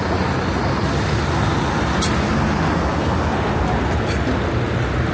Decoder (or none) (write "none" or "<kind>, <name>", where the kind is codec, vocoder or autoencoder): none